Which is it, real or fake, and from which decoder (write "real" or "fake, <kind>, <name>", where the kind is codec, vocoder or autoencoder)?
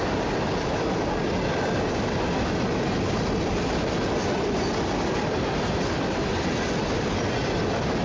real